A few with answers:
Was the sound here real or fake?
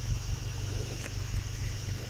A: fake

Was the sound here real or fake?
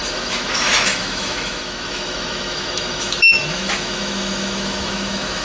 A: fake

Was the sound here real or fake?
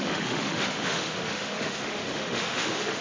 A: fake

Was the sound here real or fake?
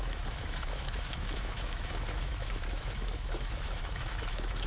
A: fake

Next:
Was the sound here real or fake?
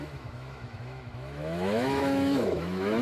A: fake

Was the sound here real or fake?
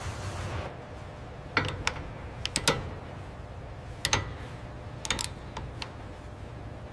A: real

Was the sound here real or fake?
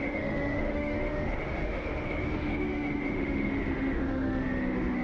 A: fake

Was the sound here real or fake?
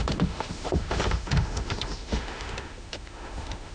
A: fake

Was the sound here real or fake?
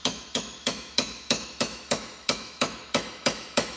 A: fake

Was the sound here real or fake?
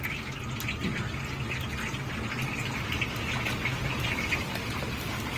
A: real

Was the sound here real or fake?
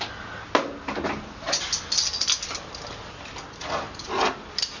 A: real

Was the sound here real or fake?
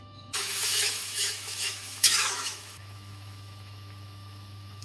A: fake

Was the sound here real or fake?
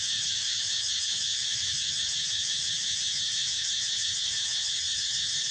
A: fake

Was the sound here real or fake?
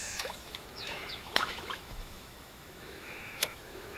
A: fake